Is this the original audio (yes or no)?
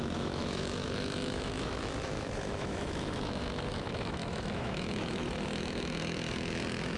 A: no